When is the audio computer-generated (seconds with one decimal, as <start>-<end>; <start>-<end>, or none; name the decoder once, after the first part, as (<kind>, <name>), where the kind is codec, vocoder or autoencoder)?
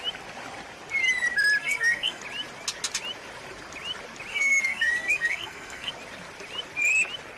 1.6-2.2 (codec, SNAC); 4.3-5.9